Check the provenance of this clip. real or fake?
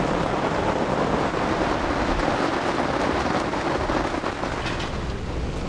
real